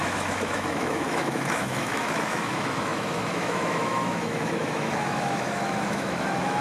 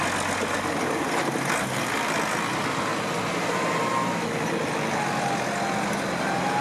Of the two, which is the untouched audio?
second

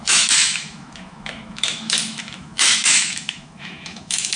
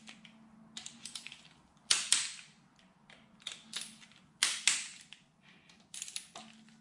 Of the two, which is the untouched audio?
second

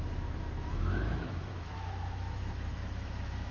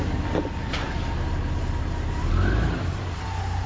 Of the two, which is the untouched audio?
second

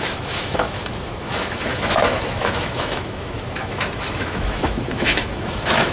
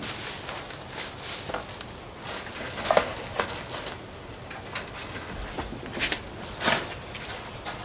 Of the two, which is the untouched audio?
second